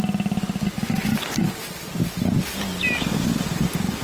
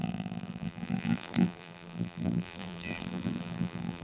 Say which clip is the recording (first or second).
first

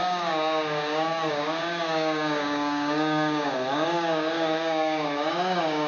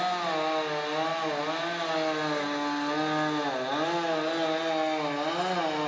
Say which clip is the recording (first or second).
second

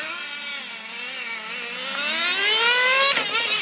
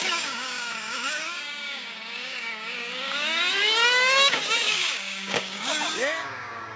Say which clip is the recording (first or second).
first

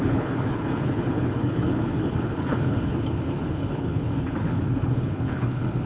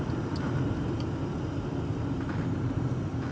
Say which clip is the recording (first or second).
second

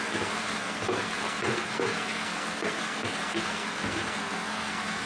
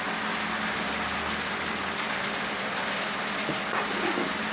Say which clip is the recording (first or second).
second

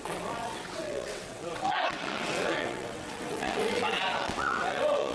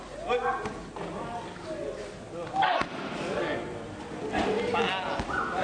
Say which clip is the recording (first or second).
second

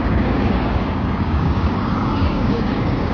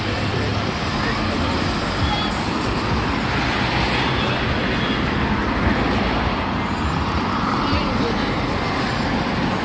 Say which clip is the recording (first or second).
second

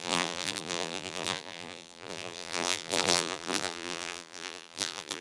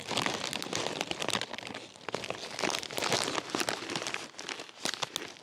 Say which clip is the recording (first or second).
second